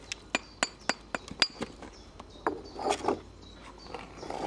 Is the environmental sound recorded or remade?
recorded